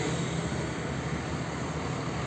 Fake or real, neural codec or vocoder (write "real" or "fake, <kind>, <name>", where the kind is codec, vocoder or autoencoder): real